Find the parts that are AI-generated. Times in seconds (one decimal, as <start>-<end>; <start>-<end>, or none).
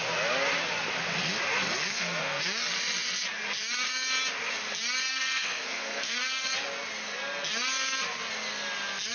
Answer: 1.9-2.4; 5.1-6.5